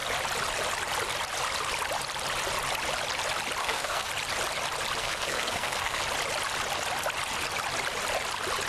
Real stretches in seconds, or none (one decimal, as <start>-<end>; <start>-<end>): 0.0-3.6; 4.1-5.0; 6.0-8.7